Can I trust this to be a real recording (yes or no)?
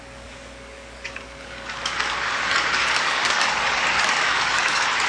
no